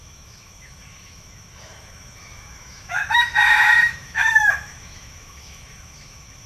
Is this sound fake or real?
fake